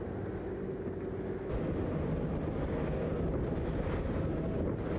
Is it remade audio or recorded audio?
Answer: recorded